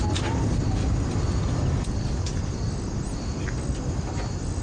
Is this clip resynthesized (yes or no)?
no